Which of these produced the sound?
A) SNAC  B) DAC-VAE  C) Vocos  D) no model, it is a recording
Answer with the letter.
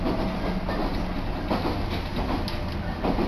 D